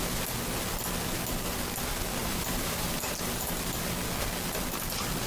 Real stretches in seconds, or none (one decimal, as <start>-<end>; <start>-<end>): 0.0-2.2; 3.5-5.3